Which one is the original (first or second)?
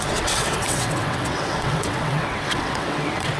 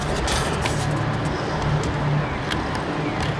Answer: second